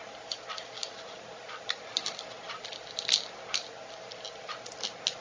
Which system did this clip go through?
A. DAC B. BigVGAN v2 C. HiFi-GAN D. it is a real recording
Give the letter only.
D